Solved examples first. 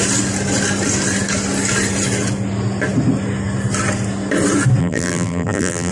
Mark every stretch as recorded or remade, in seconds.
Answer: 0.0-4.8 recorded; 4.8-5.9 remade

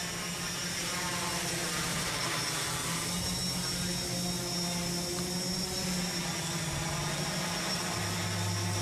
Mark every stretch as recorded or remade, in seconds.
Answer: 0.0-1.9 recorded; 1.9-2.4 remade; 2.4-8.8 recorded

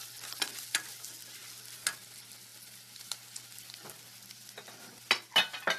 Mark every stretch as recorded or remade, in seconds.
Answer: 0.0-5.8 recorded

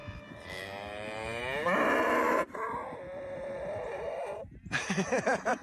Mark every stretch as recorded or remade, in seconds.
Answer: 0.0-5.6 remade

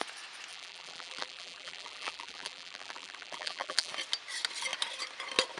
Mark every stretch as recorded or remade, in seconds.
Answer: 0.0-0.5 recorded; 0.5-3.9 remade; 3.9-5.6 recorded

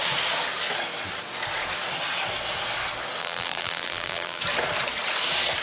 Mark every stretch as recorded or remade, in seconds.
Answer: 0.0-3.2 recorded; 3.2-4.4 remade; 4.4-5.6 recorded

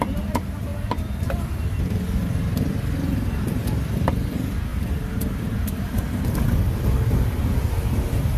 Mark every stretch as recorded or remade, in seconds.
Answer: 0.0-0.7 recorded; 0.7-1.5 remade; 1.5-4.7 recorded; 4.7-7.4 remade; 7.4-8.4 recorded

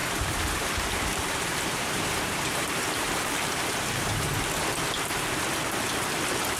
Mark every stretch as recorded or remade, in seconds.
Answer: 0.0-3.3 remade; 3.3-6.6 recorded